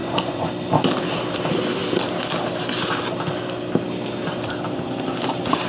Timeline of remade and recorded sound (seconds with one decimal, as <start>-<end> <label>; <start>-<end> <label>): 0.0-0.5 remade; 0.5-5.7 recorded